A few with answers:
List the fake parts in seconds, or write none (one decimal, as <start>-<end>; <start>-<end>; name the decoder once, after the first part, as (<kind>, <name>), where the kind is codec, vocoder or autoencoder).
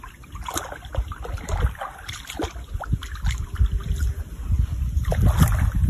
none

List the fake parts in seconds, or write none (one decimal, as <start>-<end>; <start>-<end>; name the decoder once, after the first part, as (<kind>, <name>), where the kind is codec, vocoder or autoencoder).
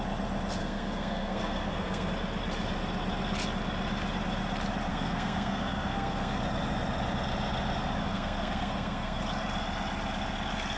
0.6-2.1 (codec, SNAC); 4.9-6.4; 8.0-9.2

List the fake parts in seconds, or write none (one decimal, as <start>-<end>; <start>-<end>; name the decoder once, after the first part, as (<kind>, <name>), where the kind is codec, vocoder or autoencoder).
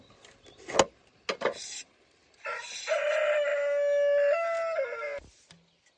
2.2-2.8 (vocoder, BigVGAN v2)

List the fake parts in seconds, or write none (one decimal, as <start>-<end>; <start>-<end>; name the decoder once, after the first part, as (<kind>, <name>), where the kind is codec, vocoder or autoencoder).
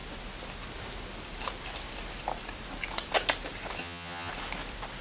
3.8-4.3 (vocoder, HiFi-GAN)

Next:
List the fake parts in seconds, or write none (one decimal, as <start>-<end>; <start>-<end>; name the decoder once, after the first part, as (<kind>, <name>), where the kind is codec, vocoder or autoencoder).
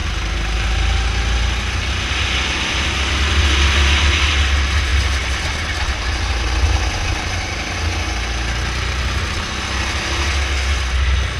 none